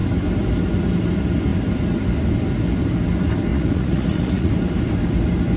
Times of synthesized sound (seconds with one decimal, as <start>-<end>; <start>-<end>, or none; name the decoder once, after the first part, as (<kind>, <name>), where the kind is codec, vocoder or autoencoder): 3.5-4.5 (vocoder, Vocos)